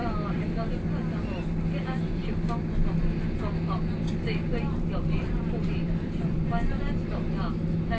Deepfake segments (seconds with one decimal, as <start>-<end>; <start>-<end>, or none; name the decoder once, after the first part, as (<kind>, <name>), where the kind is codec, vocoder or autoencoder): 0.0-0.7 (vocoder, BigVGAN v2); 4.5-6.8